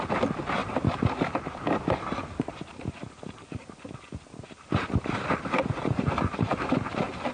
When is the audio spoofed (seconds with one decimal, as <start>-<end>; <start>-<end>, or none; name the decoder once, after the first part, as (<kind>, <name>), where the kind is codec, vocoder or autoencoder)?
none